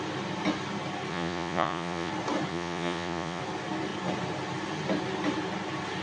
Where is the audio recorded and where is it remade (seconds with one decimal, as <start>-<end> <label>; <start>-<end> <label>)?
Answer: 0.0-1.1 recorded; 1.1-2.1 remade; 2.1-2.5 recorded; 2.5-3.4 remade; 3.4-6.0 recorded